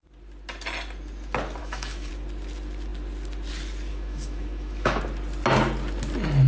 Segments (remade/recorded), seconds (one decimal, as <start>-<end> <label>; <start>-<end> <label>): 0.0-1.6 recorded; 1.6-2.1 remade; 2.1-3.9 recorded; 3.9-5.0 remade; 5.0-6.5 recorded